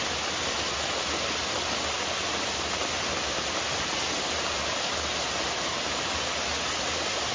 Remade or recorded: recorded